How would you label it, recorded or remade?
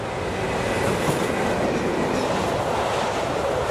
recorded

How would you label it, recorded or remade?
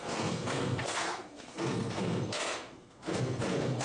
remade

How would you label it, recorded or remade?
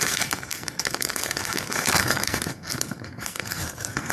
remade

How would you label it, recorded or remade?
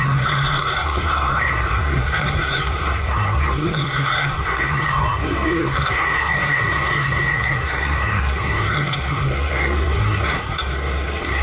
remade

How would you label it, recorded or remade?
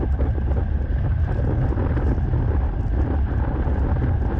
recorded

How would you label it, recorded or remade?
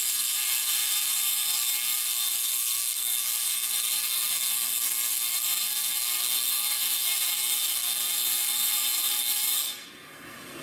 remade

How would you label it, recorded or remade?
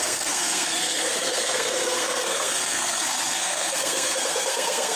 remade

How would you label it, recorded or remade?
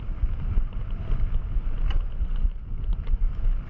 recorded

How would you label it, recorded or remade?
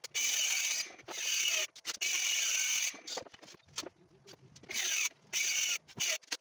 recorded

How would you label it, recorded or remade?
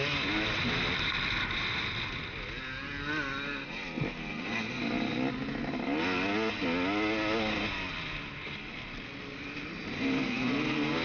recorded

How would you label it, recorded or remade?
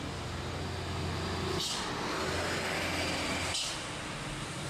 recorded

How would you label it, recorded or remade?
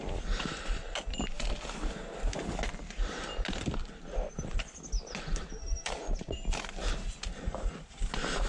recorded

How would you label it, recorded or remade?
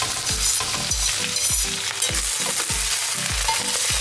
recorded